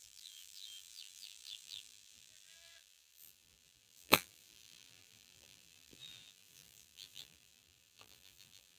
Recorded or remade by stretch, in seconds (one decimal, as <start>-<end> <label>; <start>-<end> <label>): 0.0-8.8 remade